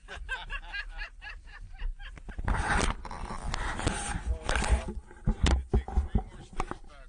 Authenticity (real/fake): real